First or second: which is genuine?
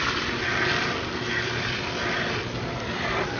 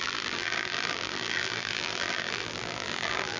first